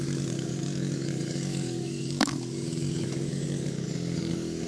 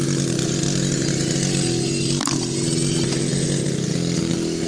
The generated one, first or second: first